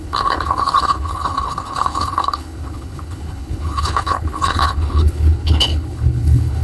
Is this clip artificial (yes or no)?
yes